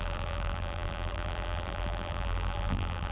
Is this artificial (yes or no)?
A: yes